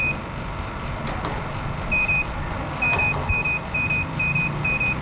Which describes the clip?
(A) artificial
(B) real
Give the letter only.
B